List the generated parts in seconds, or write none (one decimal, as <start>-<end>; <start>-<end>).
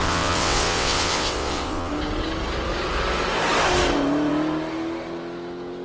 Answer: 0.0-1.9